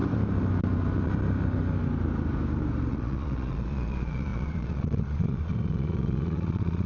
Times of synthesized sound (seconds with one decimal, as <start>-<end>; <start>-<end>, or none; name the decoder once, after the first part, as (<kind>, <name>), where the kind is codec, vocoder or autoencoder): 2.9-6.9 (vocoder, Vocos)

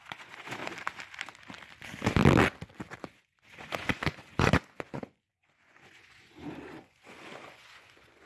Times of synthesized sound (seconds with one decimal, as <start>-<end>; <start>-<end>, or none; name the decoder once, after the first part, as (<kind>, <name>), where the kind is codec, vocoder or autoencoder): 0.0-0.6 (vocoder, Vocos); 3.0-8.3

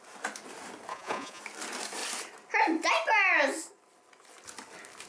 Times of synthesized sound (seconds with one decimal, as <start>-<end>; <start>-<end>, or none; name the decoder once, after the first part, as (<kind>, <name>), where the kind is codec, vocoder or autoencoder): 0.9-1.4 (vocoder, Vocos)

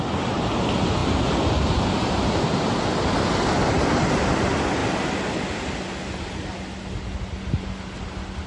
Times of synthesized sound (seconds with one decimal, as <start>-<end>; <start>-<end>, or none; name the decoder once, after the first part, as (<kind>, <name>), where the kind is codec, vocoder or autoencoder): none

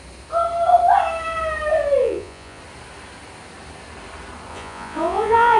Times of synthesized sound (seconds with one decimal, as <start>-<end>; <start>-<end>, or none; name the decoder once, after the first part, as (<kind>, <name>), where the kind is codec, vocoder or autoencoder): 2.0-2.6 (vocoder, Vocos); 4.5-5.6

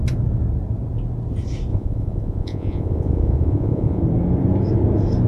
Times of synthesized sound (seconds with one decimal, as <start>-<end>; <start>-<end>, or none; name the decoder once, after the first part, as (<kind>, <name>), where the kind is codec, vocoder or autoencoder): 1.7-4.0 (vocoder, Vocos)

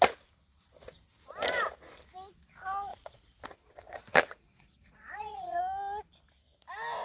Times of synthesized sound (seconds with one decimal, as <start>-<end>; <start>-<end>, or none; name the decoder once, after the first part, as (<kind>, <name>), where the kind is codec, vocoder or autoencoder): 2.9-5.6 (vocoder, Vocos)

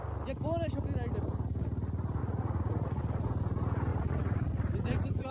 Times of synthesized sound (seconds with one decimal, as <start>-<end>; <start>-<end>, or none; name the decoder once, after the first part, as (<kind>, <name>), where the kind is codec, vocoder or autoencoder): 2.2-3.0 (vocoder, Vocos); 3.9-4.5